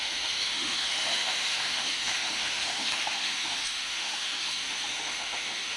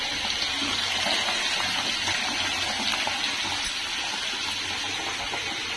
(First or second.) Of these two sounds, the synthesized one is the first